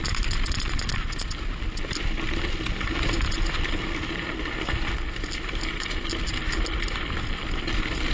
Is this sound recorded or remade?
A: recorded